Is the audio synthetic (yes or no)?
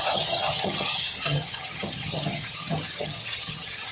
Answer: yes